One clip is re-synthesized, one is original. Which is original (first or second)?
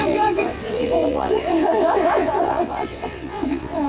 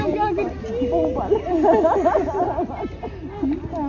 second